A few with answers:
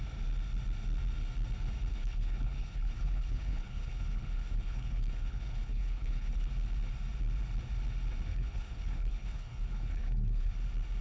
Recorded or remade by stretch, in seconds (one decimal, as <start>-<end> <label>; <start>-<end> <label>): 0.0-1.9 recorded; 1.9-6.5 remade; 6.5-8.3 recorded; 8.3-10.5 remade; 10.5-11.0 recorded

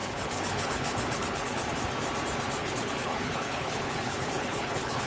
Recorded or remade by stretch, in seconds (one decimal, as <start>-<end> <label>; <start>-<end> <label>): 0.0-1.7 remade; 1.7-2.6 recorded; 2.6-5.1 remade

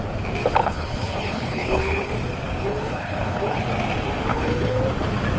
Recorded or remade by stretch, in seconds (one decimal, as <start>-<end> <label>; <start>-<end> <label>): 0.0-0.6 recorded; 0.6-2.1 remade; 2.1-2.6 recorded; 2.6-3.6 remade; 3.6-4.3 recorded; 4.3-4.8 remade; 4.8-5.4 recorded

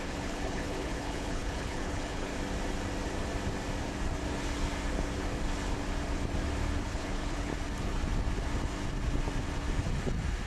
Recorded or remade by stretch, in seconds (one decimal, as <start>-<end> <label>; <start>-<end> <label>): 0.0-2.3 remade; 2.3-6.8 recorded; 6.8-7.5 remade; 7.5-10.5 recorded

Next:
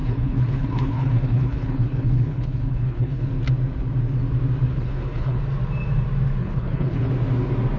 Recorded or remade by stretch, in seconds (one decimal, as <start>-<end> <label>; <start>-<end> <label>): 0.0-3.3 remade; 3.3-4.7 recorded; 4.7-5.4 remade; 5.4-6.4 recorded; 6.4-7.1 remade; 7.1-7.8 recorded

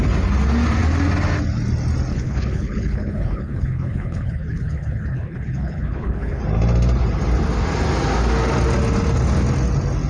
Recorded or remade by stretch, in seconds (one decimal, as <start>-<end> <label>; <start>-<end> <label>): 0.0-2.1 recorded; 2.1-6.4 remade; 6.4-10.1 recorded

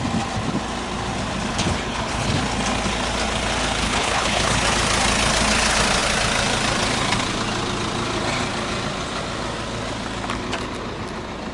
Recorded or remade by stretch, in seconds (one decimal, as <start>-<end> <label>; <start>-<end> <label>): 0.0-1.5 recorded; 1.5-2.4 remade; 2.4-3.8 recorded; 3.8-4.6 remade; 4.6-11.5 recorded